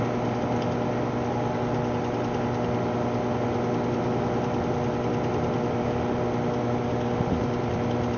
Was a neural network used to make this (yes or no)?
no